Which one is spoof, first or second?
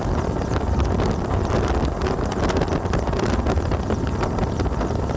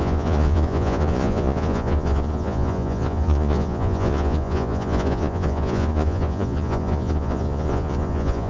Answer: second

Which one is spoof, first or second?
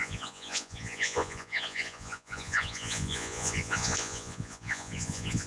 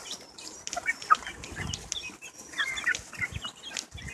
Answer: first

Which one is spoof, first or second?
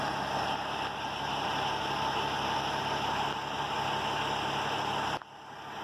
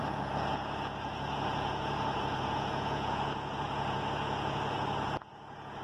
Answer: second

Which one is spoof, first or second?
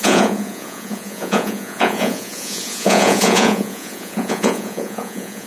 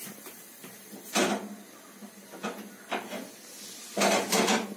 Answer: first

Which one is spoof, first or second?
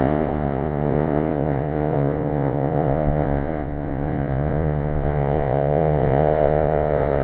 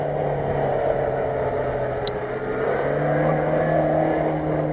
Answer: first